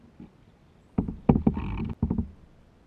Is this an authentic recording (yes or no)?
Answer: yes